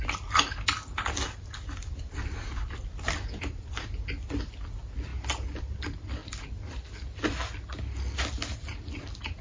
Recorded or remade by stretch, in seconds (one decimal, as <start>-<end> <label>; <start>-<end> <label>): 0.0-9.4 recorded